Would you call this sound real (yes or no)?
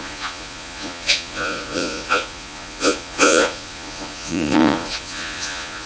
no